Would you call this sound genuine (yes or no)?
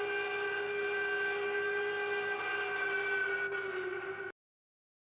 yes